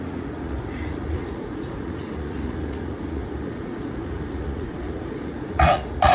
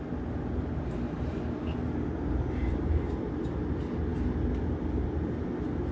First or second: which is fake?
first